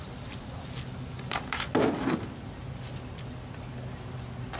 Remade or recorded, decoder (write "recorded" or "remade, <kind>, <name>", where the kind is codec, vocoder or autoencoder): recorded